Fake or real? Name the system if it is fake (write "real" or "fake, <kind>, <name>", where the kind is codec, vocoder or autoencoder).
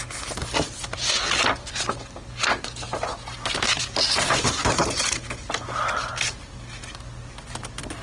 real